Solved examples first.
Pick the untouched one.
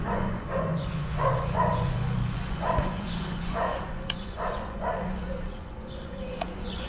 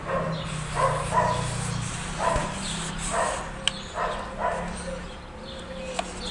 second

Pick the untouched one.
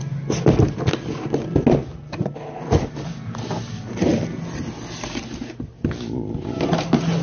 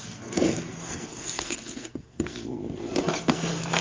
first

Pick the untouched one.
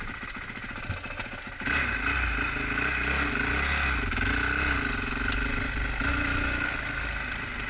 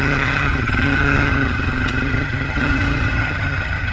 first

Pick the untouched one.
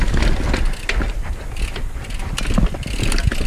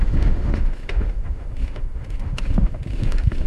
first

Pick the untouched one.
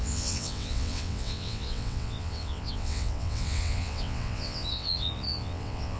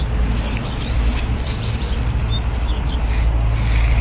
second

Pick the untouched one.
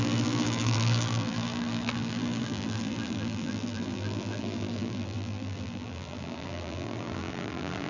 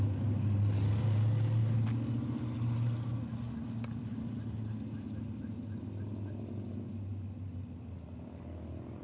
second